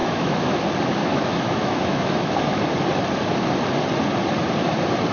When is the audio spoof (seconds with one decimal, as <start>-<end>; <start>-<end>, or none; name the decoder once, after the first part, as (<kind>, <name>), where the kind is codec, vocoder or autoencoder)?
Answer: 0.0-0.6 (autoencoder, DAC-VAE); 1.0-2.6